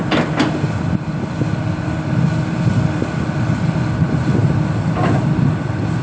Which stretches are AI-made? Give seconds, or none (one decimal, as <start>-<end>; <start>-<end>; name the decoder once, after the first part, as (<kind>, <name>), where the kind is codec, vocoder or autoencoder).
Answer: none